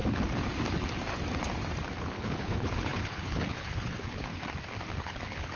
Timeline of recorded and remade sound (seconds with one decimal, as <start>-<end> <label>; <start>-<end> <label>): 0.0-2.0 recorded; 2.0-4.3 remade; 4.3-5.0 recorded; 5.0-5.6 remade

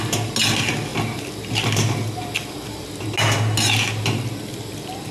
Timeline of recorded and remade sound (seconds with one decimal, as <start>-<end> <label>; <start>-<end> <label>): 0.0-5.1 recorded

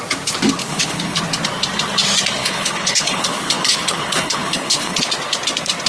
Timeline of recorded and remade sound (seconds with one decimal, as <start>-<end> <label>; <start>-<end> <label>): 0.0-0.6 recorded; 0.6-1.2 remade; 1.2-2.4 recorded; 2.4-5.1 remade; 5.1-5.9 recorded

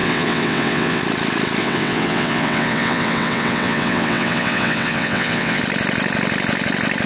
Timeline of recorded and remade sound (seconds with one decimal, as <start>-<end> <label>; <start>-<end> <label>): 0.0-1.0 remade; 1.0-1.6 recorded; 1.6-5.6 remade; 5.6-7.1 recorded

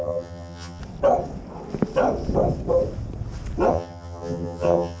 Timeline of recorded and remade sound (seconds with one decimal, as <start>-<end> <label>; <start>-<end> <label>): 0.0-0.8 remade; 0.8-3.7 recorded; 3.7-5.0 remade

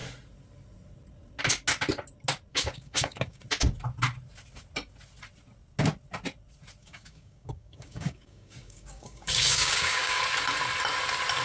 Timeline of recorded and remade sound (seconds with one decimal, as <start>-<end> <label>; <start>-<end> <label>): 0.0-2.5 recorded; 2.5-3.4 remade; 3.4-6.8 recorded; 6.8-10.2 remade; 10.2-11.4 recorded